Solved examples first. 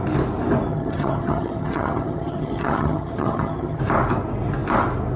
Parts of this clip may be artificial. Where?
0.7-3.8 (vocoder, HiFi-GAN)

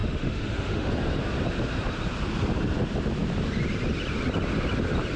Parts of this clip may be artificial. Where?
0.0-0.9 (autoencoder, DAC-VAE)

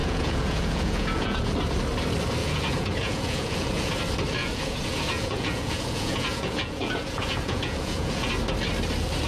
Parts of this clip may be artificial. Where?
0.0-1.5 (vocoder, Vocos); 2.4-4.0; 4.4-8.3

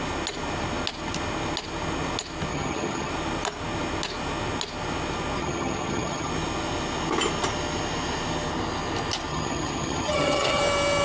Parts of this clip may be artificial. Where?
2.5-3.1 (vocoder, HiFi-GAN); 5.4-6.3; 9.3-10.6

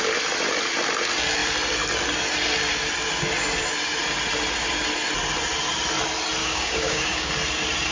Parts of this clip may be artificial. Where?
6.4-7.3 (codec, DAC)

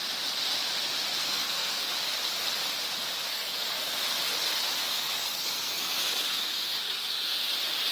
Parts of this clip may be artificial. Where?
1.2-1.9 (codec, SNAC); 3.3-4.0; 4.8-7.5

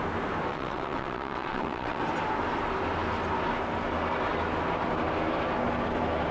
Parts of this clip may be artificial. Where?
0.5-2.0 (vocoder, WaveNeXt)